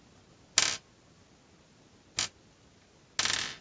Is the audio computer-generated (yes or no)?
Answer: no